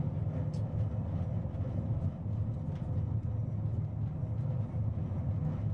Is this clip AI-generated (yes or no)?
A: no